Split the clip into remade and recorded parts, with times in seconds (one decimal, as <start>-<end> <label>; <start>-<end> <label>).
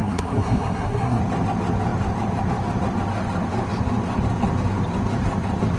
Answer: 0.0-1.2 remade; 1.2-5.8 recorded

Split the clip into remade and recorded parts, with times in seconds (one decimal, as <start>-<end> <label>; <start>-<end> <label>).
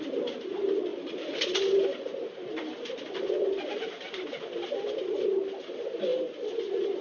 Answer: 0.0-7.0 recorded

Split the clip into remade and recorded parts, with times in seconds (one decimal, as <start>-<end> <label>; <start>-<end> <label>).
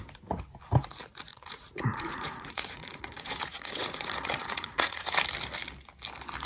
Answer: 0.0-1.3 recorded; 1.3-5.2 remade; 5.2-6.5 recorded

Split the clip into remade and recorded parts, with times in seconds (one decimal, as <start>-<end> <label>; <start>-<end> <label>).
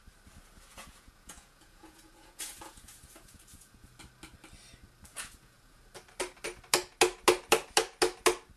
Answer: 0.0-0.7 recorded; 0.7-4.0 remade; 4.0-5.1 recorded; 5.1-5.8 remade; 5.8-8.6 recorded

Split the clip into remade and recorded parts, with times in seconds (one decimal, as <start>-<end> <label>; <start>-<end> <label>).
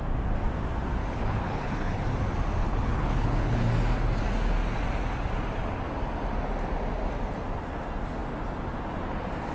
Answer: 0.0-1.0 recorded; 1.0-2.0 remade; 2.0-2.6 recorded; 2.6-3.7 remade; 3.7-9.5 recorded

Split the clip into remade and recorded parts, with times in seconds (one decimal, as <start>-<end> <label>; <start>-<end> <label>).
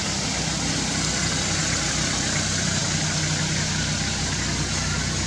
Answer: 0.0-5.3 recorded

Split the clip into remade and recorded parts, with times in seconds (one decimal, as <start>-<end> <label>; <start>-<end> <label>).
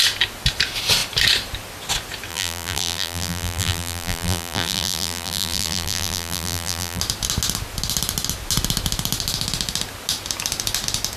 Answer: 0.0-2.3 recorded; 2.3-7.0 remade; 7.0-11.2 recorded